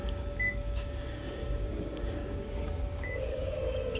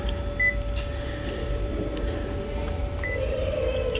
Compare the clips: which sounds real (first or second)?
second